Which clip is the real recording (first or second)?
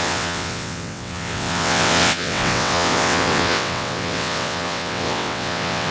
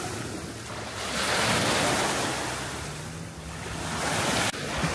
second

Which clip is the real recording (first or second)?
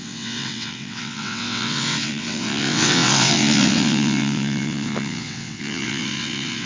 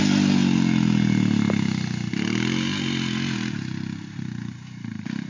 second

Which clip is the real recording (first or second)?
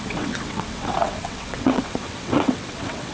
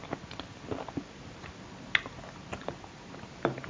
second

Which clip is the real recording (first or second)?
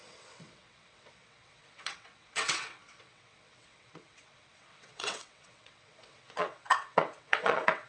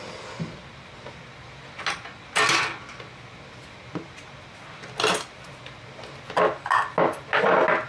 second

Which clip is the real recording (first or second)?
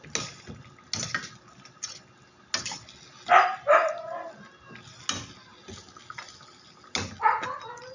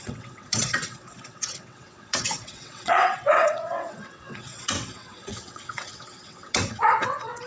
first